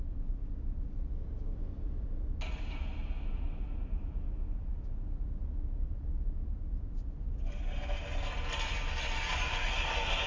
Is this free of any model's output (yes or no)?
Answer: yes